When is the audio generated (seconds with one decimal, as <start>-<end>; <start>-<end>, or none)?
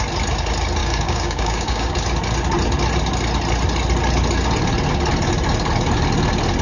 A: 0.8-1.9